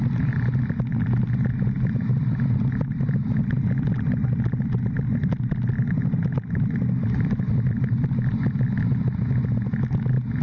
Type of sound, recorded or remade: remade